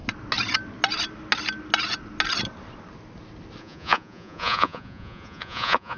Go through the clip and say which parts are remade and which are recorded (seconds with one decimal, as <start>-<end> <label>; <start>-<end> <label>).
0.0-3.6 recorded; 3.6-6.0 remade